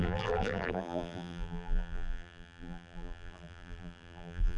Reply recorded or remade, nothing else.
remade